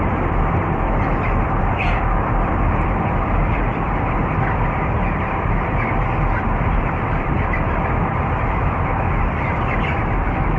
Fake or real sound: fake